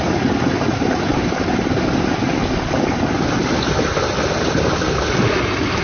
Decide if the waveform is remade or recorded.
recorded